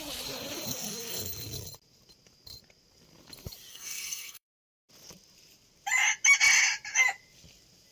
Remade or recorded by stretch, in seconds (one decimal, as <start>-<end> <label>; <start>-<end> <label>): 0.0-3.7 recorded; 3.7-4.9 remade; 4.9-7.9 recorded